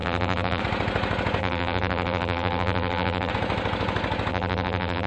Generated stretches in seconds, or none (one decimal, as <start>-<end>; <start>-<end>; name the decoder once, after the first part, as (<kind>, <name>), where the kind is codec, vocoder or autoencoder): 0.0-0.6 (vocoder, BigVGAN v2); 1.4-3.3; 4.3-5.1

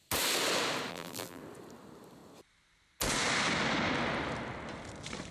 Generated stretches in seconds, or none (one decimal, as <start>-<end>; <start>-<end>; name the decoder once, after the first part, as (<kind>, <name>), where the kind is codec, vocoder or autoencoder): 0.9-1.4 (vocoder, BigVGAN v2)

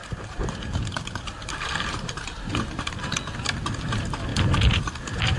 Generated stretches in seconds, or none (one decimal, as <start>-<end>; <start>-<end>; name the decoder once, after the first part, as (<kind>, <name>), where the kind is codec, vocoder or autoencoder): 0.0-3.2 (vocoder, BigVGAN v2)

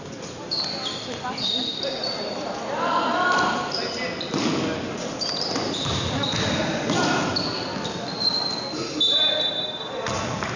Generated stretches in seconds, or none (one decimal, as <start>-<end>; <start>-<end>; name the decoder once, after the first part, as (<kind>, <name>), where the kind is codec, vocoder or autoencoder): none

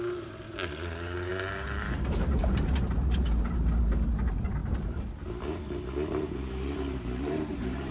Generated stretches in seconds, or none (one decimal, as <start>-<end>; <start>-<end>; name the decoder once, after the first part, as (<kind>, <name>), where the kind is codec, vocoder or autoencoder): 0.0-4.6 (vocoder, BigVGAN v2); 6.2-7.9

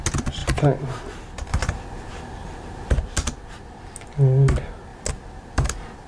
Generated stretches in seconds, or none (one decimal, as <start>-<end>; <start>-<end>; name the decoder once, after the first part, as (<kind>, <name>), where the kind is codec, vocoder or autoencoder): 0.4-1.1 (vocoder, BigVGAN v2); 1.5-2.9; 4.9-6.1

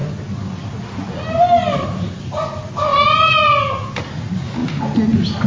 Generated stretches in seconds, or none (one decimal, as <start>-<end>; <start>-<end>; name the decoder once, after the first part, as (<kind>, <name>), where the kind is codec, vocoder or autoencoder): 1.1-2.9 (vocoder, BigVGAN v2); 3.6-4.6

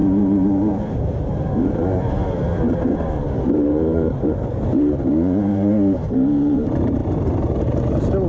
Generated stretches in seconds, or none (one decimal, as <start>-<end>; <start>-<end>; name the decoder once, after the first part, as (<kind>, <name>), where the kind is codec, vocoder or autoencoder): 0.0-7.0 (vocoder, BigVGAN v2)